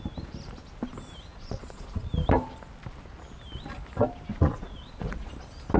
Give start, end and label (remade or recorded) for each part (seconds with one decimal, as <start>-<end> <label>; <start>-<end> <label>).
0.0-1.3 recorded; 1.3-2.1 remade; 2.1-4.3 recorded; 4.3-5.3 remade; 5.3-5.8 recorded